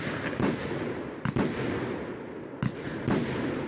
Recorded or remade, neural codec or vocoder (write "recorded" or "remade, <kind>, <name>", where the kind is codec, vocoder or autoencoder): recorded